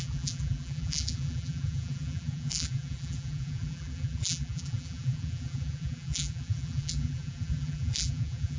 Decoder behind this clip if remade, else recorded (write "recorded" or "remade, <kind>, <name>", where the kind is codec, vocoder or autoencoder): remade, vocoder, BigVGAN v2